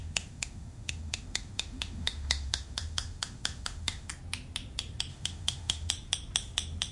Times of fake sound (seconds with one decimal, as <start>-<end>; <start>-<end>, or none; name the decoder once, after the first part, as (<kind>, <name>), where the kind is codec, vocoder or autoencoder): 0.0-4.1 (autoencoder, DAC-VAE); 5.1-5.9